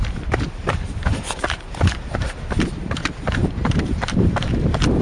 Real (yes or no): no